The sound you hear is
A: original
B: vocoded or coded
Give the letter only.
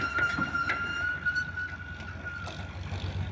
A